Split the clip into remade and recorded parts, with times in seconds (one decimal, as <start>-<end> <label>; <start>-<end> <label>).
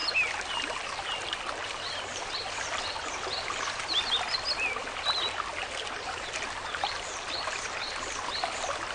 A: 0.0-8.9 recorded